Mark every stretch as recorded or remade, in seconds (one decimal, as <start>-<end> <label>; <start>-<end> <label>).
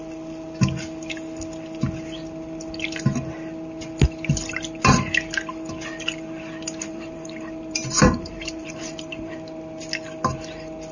0.0-6.9 recorded; 6.9-9.3 remade; 9.3-10.9 recorded